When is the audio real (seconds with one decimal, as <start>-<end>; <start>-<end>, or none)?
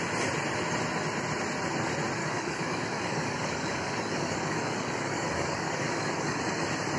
0.0-2.2; 6.4-7.0